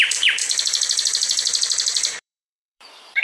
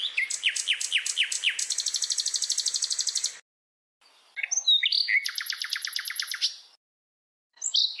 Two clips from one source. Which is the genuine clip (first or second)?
second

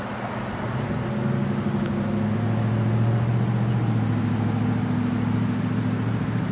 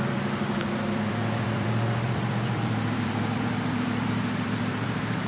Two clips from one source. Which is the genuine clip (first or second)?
first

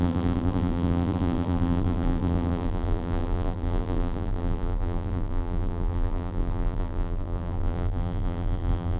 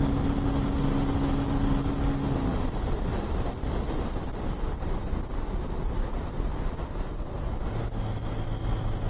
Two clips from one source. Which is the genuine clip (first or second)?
second